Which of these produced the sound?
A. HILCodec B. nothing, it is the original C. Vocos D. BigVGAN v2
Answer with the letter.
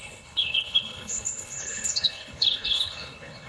A